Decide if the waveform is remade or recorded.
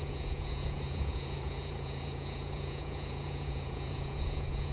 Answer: remade